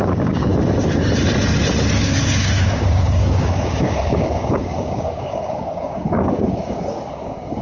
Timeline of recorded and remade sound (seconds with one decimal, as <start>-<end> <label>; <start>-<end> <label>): 0.0-0.5 remade; 0.5-2.0 recorded; 2.0-7.6 remade